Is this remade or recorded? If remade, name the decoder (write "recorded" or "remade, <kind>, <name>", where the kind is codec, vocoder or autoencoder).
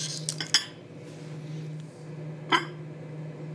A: recorded